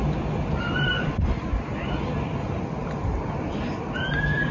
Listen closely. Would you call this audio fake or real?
real